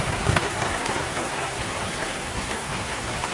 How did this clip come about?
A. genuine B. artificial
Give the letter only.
B